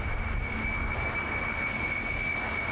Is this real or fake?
real